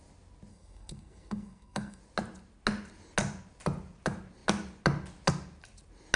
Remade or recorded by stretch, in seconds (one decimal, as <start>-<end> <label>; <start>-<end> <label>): 0.0-0.5 recorded; 0.5-2.0 remade; 2.0-6.2 recorded